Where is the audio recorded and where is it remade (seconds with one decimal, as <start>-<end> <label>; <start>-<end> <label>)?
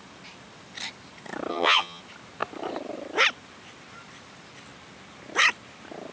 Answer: 0.0-1.5 recorded; 1.5-2.0 remade; 2.0-6.1 recorded